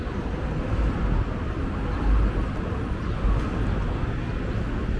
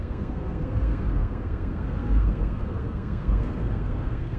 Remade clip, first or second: second